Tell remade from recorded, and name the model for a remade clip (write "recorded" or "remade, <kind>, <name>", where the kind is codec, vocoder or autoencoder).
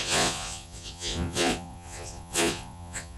remade, vocoder, Vocos